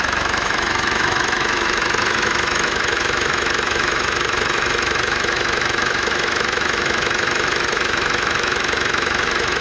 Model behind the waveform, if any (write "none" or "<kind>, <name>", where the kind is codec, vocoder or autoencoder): autoencoder, DAC-VAE